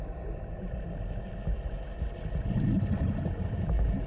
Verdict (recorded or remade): recorded